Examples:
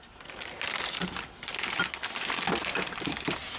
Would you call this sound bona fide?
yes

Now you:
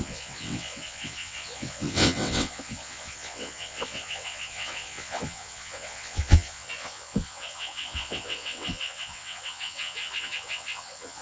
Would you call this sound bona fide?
no